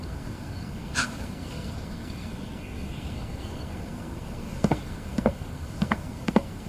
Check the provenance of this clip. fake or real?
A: fake